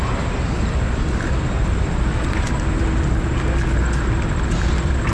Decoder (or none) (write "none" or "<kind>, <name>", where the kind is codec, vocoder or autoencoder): none